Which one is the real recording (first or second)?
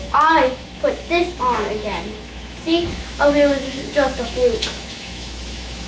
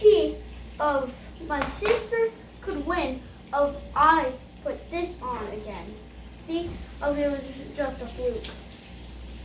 second